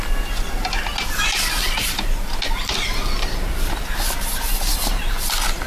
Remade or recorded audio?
recorded